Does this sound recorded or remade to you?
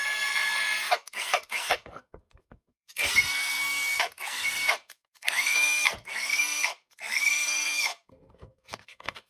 remade